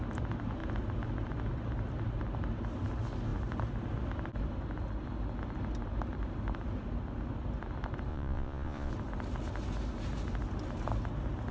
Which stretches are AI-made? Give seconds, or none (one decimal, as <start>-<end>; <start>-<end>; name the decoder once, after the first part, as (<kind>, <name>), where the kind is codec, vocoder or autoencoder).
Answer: 8.1-8.9 (vocoder, Vocos)